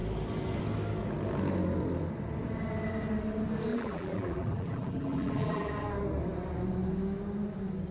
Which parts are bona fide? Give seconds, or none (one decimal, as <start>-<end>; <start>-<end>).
0.0-3.7; 5.7-7.9